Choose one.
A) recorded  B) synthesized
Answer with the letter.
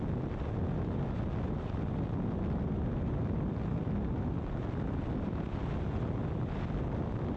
A